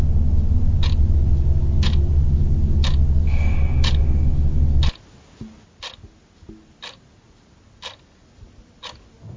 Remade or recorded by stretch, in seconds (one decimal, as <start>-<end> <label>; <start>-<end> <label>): 0.0-9.4 recorded